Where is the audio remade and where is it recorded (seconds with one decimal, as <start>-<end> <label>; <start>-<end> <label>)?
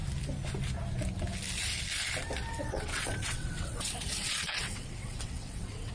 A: 0.0-2.6 recorded; 2.6-5.9 remade